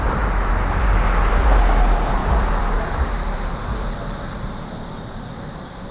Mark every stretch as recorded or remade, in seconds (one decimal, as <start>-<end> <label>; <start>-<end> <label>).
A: 0.0-2.2 recorded; 2.2-5.9 remade